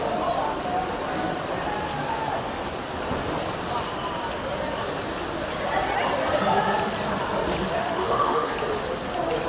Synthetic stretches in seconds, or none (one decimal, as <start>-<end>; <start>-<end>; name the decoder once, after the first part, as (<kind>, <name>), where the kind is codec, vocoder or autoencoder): 7.8-8.5 (autoencoder, DAC-VAE)

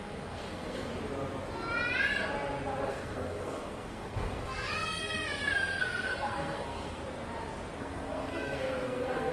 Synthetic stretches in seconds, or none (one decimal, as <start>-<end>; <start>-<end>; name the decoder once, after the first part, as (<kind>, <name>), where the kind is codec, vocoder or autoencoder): 0.0-0.9 (codec, SNAC); 2.9-7.0; 7.8-9.3